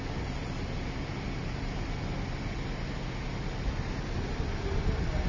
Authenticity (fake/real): real